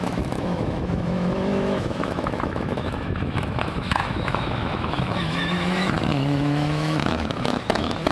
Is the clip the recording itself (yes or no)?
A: no